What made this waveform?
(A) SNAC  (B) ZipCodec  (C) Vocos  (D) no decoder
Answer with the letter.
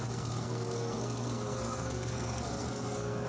A